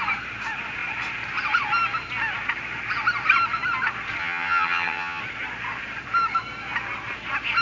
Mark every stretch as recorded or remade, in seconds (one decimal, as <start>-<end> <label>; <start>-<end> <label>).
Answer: 0.0-4.2 recorded; 4.2-5.2 remade; 5.2-7.6 recorded